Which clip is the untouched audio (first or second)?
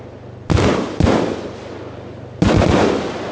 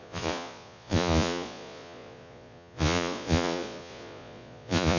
first